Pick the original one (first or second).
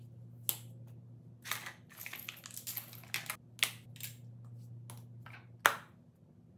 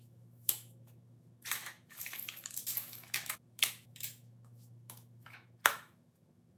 first